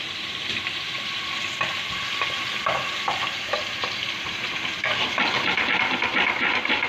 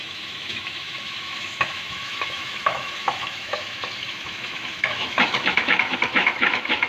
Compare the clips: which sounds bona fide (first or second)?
first